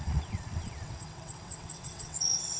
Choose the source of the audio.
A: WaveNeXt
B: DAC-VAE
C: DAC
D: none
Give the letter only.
A